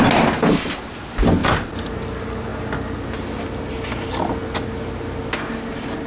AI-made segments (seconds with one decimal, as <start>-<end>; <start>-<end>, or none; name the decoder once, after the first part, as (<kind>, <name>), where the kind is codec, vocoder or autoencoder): none